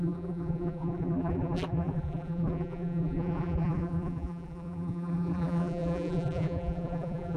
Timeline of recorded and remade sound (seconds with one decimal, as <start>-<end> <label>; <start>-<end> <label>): 0.0-7.4 remade

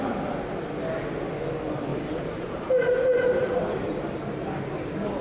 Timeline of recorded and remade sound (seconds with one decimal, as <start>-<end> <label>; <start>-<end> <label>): 0.0-1.9 recorded; 1.9-2.8 remade; 2.8-3.4 recorded; 3.4-4.1 remade; 4.1-5.2 recorded

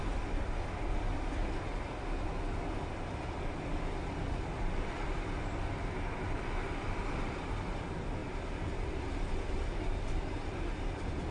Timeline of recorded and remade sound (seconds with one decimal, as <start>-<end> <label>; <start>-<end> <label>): 0.0-11.3 recorded

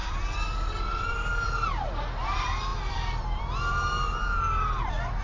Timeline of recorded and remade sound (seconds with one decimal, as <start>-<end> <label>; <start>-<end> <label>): 0.0-1.5 remade; 1.5-2.7 recorded; 2.7-3.4 remade; 3.4-5.2 recorded

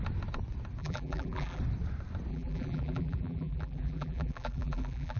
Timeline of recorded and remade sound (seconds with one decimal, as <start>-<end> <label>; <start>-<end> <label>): 0.0-0.8 recorded; 0.8-1.6 remade; 1.6-2.3 recorded; 2.3-5.2 remade